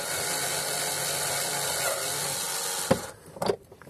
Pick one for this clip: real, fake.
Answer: real